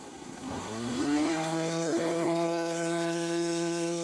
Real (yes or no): no